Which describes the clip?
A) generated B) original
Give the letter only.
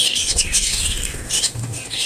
A